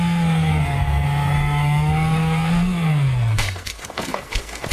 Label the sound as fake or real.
fake